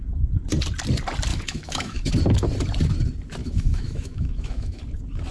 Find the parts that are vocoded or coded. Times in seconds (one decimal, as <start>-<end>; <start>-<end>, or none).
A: 1.3-2.1; 3.4-4.8